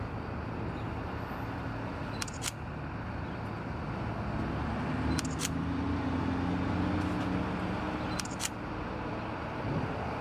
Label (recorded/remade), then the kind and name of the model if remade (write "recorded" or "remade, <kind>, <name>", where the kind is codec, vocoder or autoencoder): recorded